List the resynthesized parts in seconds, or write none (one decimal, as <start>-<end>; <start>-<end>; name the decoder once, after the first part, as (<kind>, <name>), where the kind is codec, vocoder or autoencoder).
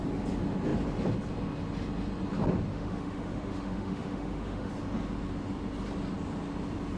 2.7-4.7 (autoencoder, DAC-VAE)